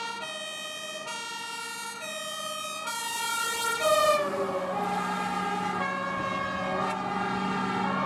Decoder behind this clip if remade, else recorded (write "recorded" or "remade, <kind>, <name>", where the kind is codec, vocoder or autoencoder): recorded